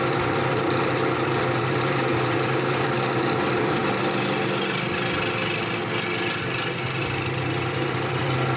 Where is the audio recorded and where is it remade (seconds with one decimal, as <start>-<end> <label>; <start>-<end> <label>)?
0.0-3.8 remade; 3.8-7.0 recorded; 7.0-8.6 remade